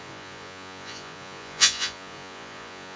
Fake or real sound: fake